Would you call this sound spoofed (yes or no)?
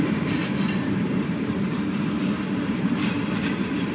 yes